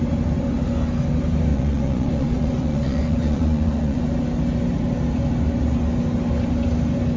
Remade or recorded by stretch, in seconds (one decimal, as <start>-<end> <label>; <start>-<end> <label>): 0.0-1.5 recorded; 1.5-4.0 remade; 4.0-7.2 recorded